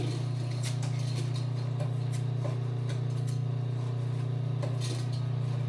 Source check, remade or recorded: recorded